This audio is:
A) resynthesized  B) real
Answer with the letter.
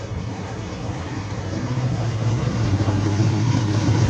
A